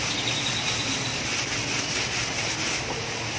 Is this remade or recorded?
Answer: recorded